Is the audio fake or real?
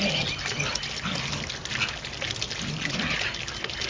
real